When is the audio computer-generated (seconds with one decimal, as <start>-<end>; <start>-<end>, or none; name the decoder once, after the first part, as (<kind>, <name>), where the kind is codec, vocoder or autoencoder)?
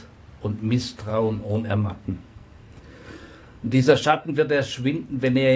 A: 1.1-4.3 (codec, SNAC)